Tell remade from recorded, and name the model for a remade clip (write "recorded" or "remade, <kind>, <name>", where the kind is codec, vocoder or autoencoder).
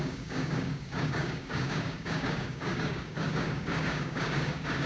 remade, codec, DAC